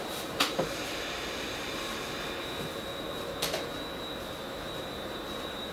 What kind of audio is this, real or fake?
fake